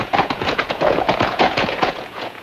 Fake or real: fake